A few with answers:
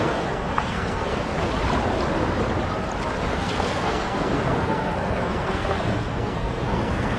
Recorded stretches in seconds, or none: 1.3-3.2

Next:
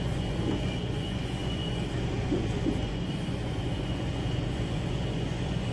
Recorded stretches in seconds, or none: none

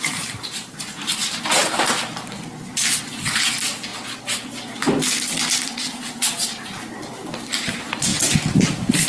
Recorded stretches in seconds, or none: 1.6-3.2; 3.9-5.5; 8.1-8.6

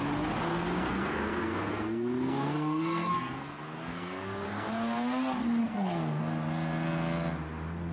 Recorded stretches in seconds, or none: 0.0-0.5; 4.7-5.6; 6.2-7.9

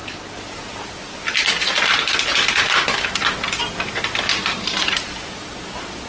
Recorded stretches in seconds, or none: 0.0-6.1

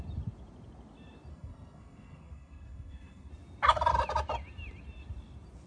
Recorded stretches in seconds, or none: 0.0-1.3; 3.3-5.7